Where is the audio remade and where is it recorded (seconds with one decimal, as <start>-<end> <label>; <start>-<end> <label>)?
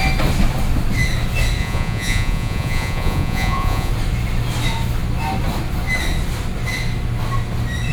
0.0-1.6 recorded; 1.6-3.9 remade; 3.9-7.9 recorded